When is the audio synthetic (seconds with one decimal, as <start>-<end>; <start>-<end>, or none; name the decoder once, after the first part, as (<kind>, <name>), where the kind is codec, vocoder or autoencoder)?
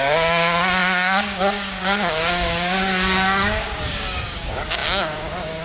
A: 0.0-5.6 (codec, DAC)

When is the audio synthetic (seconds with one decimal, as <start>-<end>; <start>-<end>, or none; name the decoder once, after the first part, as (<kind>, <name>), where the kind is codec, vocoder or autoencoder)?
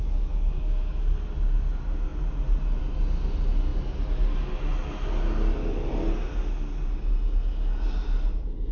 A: 0.0-0.9 (codec, DAC)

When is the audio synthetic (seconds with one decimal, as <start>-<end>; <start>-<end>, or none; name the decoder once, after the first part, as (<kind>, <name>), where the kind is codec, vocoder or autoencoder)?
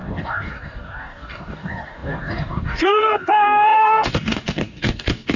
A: 0.0-5.4 (codec, DAC)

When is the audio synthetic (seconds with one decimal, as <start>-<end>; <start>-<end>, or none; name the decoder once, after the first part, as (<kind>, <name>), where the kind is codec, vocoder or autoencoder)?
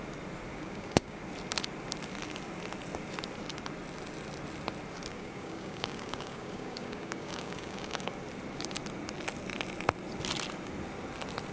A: 0.5-1.2 (codec, DAC); 5.1-8.1